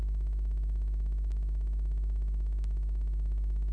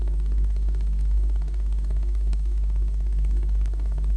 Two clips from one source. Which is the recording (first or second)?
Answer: first